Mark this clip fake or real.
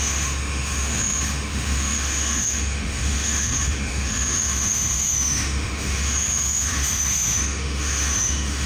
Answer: fake